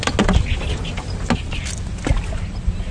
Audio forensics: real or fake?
real